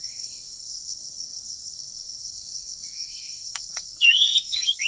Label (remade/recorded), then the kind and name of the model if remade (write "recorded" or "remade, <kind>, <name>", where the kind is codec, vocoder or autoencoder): remade, codec, SNAC